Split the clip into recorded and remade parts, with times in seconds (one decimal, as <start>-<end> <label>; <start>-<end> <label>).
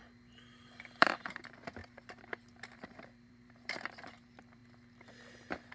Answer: 0.0-0.8 recorded; 0.8-4.6 remade; 4.6-5.7 recorded